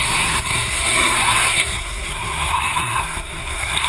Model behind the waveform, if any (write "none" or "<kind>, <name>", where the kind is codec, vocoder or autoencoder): codec, SNAC